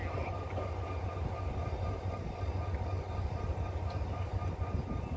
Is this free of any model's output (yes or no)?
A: yes